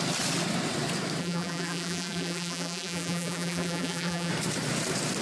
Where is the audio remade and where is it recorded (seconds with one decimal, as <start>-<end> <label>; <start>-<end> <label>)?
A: 0.0-1.2 recorded; 1.2-4.3 remade; 4.3-5.2 recorded